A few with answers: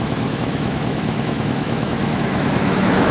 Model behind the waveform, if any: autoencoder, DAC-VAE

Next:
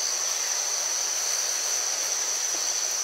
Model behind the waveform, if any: none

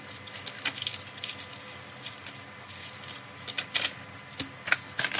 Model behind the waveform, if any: none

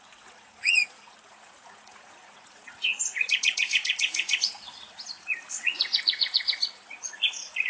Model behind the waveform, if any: vocoder, Vocos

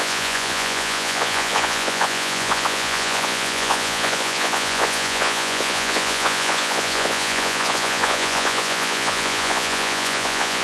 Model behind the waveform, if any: vocoder, Vocos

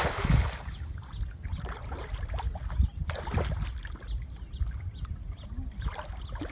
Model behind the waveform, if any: none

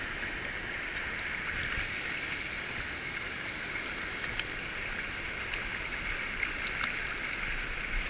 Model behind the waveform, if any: none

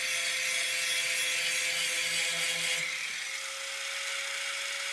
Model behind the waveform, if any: none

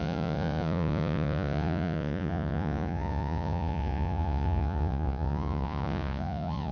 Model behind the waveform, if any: vocoder, Vocos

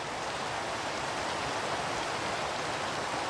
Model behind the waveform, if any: none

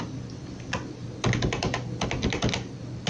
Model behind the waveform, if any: none